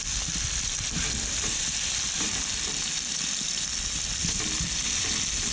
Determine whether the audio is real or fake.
real